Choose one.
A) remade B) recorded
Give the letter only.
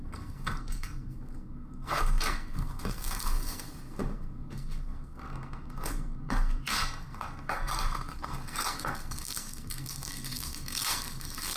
A